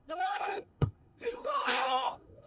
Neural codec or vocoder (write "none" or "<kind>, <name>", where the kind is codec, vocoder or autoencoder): codec, SNAC